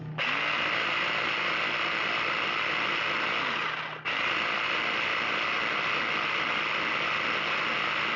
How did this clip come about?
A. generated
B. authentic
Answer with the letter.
B